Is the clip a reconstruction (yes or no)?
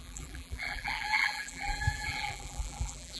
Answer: yes